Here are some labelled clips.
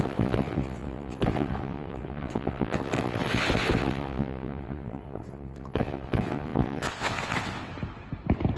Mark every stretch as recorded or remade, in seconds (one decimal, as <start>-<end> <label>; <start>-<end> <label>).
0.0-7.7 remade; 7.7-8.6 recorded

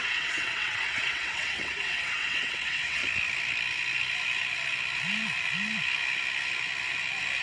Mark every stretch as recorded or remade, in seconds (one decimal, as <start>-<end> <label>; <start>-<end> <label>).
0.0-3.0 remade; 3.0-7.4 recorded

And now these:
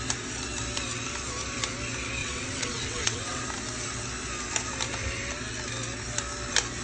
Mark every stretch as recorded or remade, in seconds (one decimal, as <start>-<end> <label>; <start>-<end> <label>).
0.0-2.2 recorded; 2.2-3.4 remade; 3.4-6.8 recorded

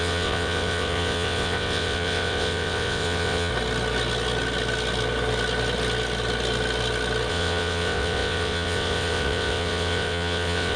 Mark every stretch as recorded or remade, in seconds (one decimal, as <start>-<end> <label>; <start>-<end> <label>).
0.0-3.5 remade; 3.5-7.3 recorded; 7.3-10.8 remade

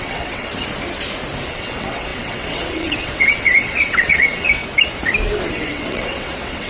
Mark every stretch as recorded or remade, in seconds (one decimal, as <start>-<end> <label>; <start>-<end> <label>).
0.0-0.5 remade; 0.5-1.5 recorded; 1.5-4.6 remade; 4.6-5.5 recorded; 5.5-6.7 remade

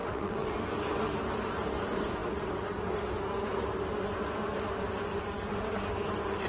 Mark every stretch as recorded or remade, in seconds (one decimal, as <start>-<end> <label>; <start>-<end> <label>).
0.0-0.5 remade; 0.5-6.5 recorded

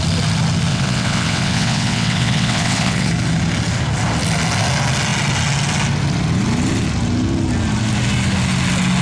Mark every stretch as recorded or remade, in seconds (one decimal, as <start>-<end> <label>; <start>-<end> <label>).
0.0-0.7 recorded; 0.7-3.1 remade; 3.1-9.0 recorded